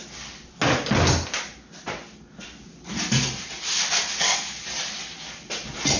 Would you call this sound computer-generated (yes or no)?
no